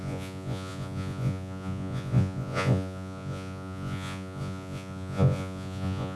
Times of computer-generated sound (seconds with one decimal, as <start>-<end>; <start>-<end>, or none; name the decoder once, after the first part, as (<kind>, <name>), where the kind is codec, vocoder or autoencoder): 0.0-6.2 (vocoder, Vocos)